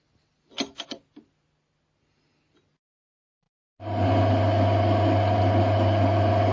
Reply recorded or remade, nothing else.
recorded